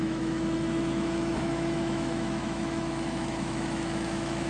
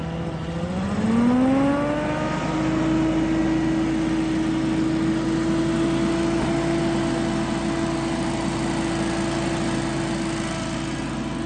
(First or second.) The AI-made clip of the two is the first